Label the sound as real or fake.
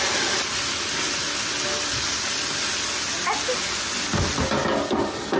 real